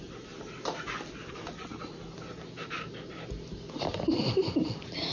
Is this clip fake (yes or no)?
no